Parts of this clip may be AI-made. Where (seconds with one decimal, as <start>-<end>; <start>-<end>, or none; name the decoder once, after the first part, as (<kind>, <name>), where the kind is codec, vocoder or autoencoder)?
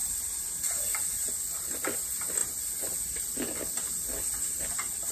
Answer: none